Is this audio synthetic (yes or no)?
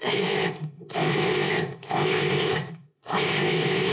yes